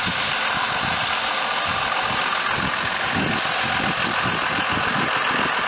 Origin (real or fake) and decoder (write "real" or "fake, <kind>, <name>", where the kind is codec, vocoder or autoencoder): real